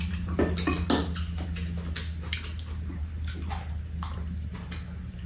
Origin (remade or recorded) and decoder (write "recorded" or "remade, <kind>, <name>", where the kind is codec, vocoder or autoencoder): recorded